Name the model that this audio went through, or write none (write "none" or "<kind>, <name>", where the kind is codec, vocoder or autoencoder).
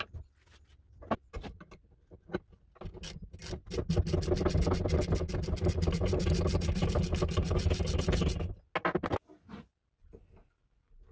none